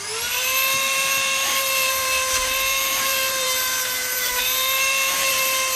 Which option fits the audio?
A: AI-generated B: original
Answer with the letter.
A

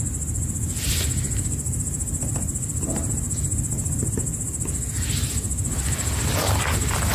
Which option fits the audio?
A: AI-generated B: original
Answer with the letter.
B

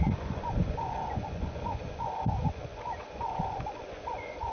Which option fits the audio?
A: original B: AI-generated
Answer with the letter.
B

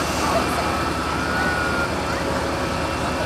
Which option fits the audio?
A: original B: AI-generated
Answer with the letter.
A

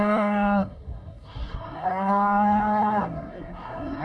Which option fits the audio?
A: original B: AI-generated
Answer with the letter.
B